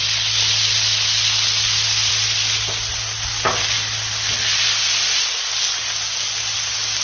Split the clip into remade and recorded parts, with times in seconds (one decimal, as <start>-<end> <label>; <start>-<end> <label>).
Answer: 0.0-7.0 recorded